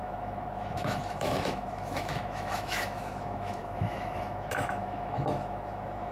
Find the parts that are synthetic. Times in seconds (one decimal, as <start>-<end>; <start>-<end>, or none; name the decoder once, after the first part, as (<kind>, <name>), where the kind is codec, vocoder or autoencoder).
0.0-6.1 (autoencoder, DAC-VAE)